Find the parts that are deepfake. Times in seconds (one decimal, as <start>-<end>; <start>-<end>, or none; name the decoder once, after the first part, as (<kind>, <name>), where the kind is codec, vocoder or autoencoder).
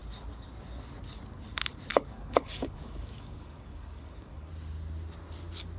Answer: 1.9-4.5 (codec, DAC)